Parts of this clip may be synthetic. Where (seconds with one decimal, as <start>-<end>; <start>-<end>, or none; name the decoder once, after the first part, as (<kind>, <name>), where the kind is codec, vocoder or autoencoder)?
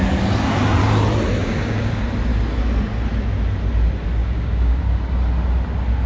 1.4-1.9 (codec, DAC); 4.2-4.8